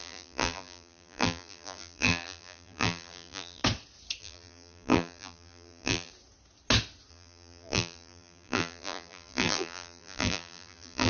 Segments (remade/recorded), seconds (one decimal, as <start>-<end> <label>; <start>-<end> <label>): 0.0-3.6 remade; 3.6-4.2 recorded; 4.2-6.1 remade; 6.1-7.1 recorded; 7.1-11.1 remade